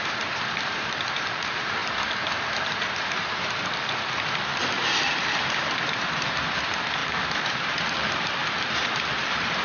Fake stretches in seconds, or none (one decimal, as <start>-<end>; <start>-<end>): 0.0-1.8; 6.6-8.4; 9.1-9.6